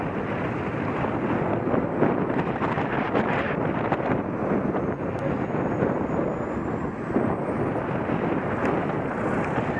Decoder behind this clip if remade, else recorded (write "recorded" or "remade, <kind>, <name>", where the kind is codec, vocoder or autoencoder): recorded